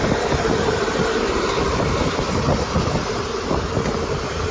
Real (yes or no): yes